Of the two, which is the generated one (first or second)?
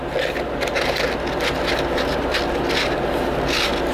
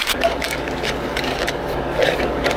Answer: second